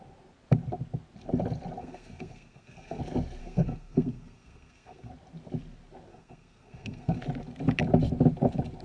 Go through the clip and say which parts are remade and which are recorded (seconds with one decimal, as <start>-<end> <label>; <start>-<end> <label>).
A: 0.0-1.8 recorded; 1.8-3.0 remade; 3.0-3.4 recorded; 3.4-5.1 remade; 5.1-6.1 recorded; 6.1-7.2 remade; 7.2-8.8 recorded